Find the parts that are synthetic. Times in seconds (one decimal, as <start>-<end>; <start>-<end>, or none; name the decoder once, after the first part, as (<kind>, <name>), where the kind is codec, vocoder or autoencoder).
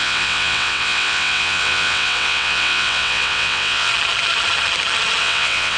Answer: 0.0-3.9 (vocoder, WaveNeXt); 5.2-5.8